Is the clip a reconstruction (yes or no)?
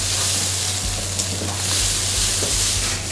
no